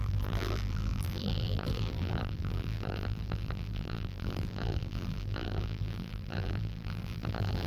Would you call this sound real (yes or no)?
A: no